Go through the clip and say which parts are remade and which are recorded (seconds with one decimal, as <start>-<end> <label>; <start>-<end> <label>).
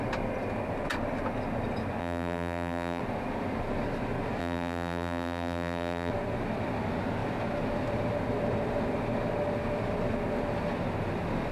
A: 0.0-2.0 recorded; 2.0-3.0 remade; 3.0-4.4 recorded; 4.4-6.1 remade; 6.1-11.5 recorded